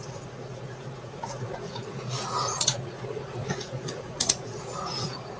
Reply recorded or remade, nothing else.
remade